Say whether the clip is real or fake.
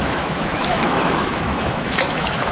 fake